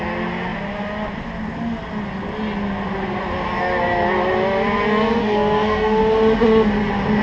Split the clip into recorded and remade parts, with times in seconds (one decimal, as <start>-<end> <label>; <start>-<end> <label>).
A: 0.0-5.2 recorded; 5.2-6.0 remade; 6.0-7.2 recorded